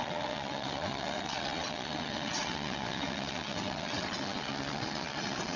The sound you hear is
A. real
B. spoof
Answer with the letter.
B